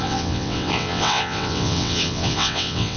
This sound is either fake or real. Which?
fake